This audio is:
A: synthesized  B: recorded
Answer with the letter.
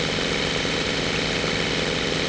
B